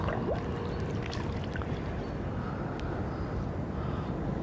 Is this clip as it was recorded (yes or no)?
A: yes